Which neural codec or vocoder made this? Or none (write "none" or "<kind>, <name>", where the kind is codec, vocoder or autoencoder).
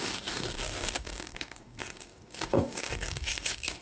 codec, DAC